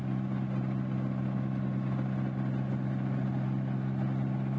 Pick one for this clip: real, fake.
real